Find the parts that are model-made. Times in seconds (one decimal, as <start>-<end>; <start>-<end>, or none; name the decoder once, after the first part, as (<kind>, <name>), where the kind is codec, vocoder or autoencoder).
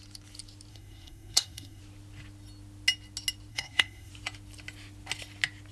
0.7-1.8 (codec, SNAC); 3.5-4.1